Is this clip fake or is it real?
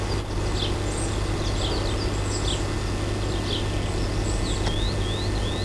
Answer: real